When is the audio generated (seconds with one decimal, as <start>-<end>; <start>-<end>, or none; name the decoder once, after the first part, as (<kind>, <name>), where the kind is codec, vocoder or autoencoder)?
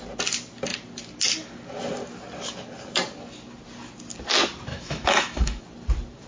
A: 4.7-5.6 (autoencoder, DAC-VAE)